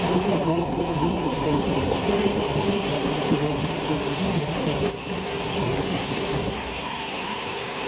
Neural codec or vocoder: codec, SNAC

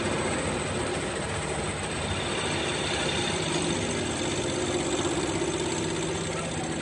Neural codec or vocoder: none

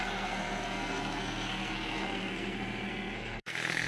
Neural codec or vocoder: codec, SNAC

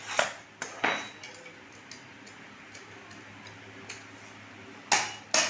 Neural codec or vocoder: none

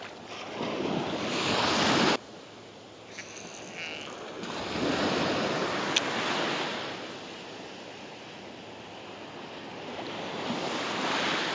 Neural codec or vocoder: none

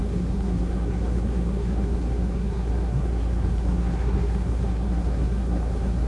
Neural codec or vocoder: codec, SNAC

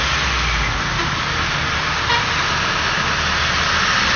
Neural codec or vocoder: none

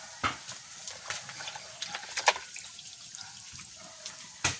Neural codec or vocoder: none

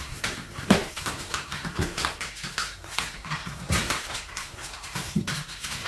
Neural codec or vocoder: codec, SNAC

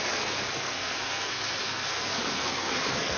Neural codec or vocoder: codec, SNAC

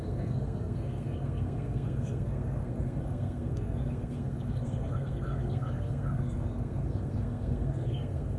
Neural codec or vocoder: codec, SNAC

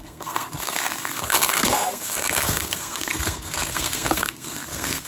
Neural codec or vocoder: codec, SNAC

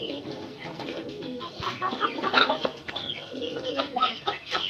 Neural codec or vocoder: codec, SNAC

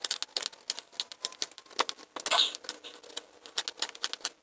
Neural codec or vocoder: none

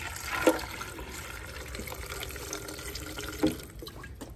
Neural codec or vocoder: none